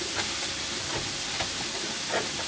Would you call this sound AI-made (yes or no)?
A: no